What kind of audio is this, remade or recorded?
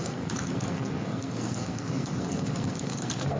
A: remade